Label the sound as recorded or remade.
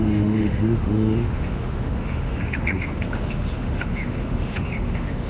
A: remade